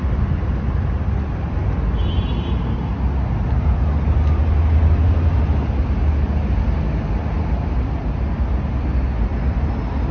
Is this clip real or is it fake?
real